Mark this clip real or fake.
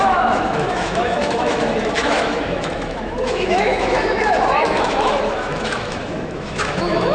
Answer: fake